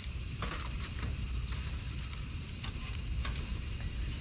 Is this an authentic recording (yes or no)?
no